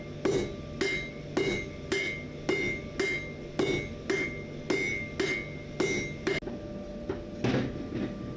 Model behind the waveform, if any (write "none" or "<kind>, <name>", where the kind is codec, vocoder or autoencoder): none